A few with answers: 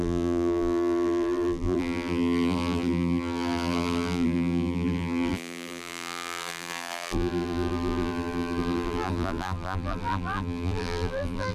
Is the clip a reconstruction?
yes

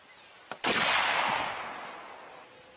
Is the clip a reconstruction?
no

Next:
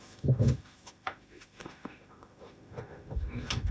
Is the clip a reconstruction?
yes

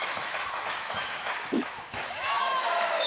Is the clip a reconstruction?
yes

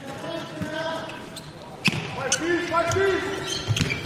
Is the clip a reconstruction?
no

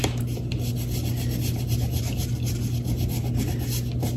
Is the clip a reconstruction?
no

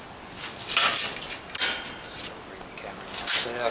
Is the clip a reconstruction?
no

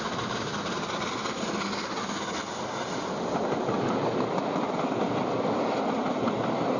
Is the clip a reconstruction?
no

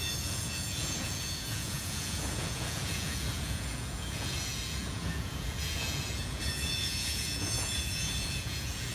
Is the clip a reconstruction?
yes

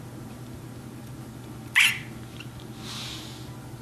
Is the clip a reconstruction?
no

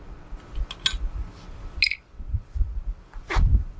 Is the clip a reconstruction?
no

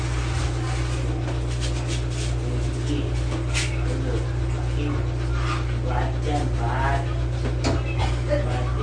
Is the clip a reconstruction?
no